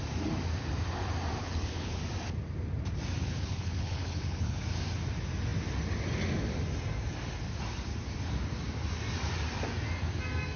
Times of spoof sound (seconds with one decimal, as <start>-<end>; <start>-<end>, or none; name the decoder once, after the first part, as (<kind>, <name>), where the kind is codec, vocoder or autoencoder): 1.4-2.0 (codec, HILCodec); 3.2-4.6